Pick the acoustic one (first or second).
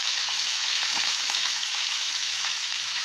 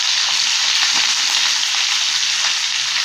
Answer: second